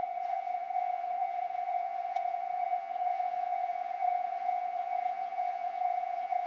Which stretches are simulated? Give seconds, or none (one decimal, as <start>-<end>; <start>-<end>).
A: 0.0-6.5